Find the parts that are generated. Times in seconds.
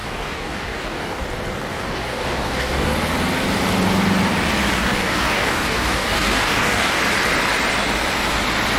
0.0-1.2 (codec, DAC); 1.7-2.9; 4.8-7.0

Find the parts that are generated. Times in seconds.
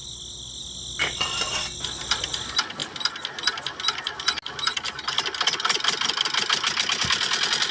none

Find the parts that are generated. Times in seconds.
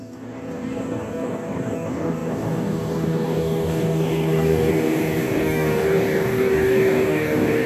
0.0-7.7 (codec, DAC)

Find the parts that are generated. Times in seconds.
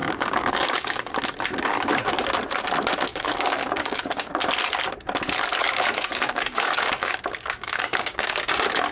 0.0-1.1 (codec, DAC); 3.1-4.3; 5.6-8.5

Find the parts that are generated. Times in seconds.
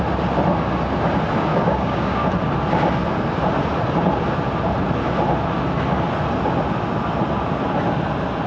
1.5-2.3 (codec, DAC)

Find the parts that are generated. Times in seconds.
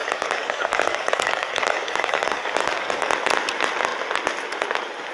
0.0-3.1 (codec, DAC)